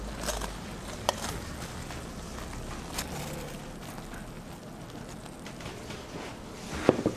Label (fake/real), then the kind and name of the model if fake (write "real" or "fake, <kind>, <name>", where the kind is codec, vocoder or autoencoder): real